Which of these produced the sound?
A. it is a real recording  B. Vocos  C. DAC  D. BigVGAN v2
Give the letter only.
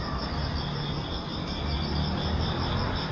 A